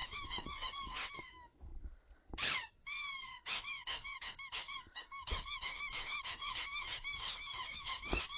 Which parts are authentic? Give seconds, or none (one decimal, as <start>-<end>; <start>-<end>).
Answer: 1.7-2.6